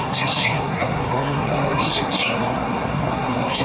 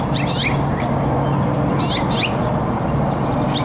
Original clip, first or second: second